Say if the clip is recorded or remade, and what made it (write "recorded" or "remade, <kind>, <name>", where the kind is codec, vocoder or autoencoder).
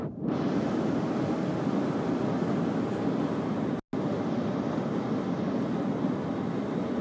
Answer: recorded